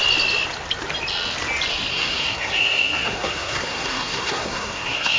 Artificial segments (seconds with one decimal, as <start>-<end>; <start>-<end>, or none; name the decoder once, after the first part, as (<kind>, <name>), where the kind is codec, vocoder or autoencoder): 1.9-5.2 (codec, SNAC)